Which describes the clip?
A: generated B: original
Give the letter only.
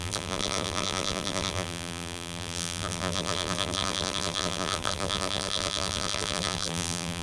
A